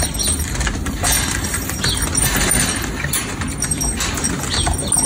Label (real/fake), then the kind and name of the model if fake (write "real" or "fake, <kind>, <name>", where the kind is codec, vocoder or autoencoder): real